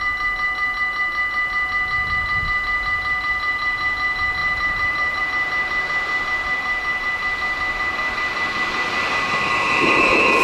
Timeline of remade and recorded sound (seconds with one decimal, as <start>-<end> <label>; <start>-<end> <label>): 0.0-4.4 recorded; 4.4-5.2 remade; 5.2-10.4 recorded